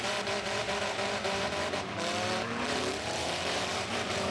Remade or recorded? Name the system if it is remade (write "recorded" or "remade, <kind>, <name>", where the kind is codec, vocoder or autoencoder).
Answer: remade, vocoder, BigVGAN v2